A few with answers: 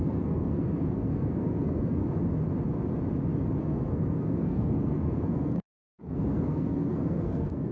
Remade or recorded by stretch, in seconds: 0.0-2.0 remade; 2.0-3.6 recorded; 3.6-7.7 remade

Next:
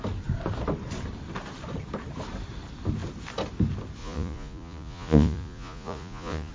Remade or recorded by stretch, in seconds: 0.0-4.0 recorded; 4.0-6.5 remade

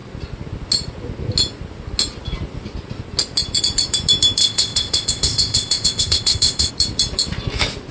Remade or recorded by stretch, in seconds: 0.0-4.4 recorded; 4.4-6.7 remade; 6.7-7.9 recorded